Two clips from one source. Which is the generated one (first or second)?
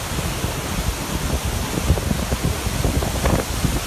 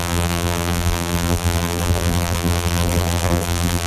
second